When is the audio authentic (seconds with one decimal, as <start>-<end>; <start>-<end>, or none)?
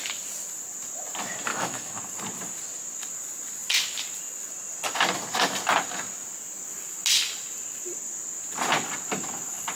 0.0-1.5; 2.0-9.7